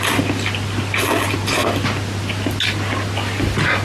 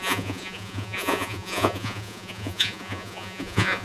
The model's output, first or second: second